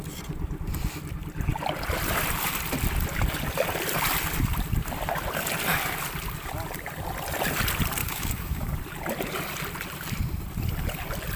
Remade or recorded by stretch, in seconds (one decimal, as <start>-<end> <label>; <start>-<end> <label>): 0.0-8.0 recorded; 8.0-8.8 remade; 8.8-11.4 recorded